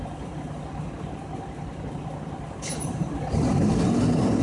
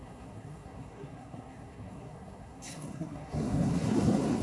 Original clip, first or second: first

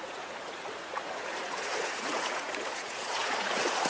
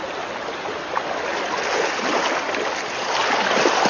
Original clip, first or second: second